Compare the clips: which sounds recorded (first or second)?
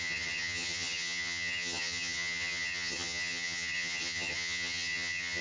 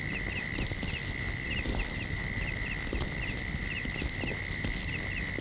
second